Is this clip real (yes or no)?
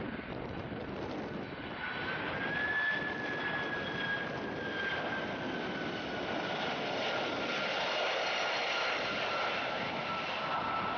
yes